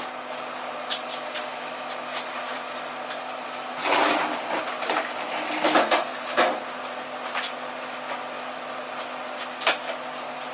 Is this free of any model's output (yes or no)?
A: yes